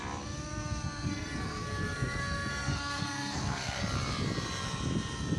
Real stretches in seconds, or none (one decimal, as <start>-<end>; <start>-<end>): 0.0-0.6; 3.8-5.4